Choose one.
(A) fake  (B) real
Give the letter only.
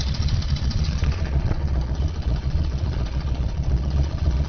A